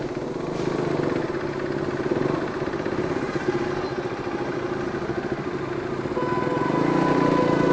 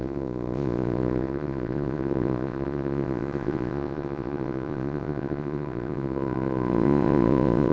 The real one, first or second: first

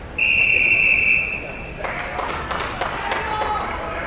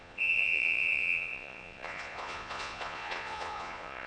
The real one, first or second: first